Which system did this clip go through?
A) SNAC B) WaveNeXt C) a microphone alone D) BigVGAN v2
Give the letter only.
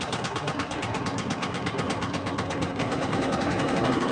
A